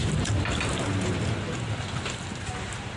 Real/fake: real